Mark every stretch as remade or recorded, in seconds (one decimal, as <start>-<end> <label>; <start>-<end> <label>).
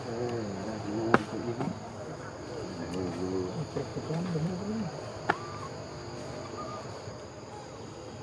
0.0-3.9 recorded; 3.9-5.2 remade; 5.2-6.7 recorded; 6.7-7.3 remade; 7.3-8.2 recorded